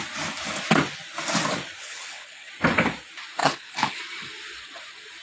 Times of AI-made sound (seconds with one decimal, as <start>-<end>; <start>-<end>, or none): 1.8-2.5; 3.4-4.0